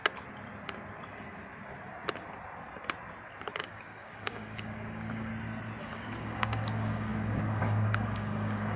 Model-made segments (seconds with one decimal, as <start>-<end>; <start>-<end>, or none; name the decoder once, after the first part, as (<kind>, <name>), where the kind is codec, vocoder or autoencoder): 3.6-5.3 (codec, DAC); 5.8-8.8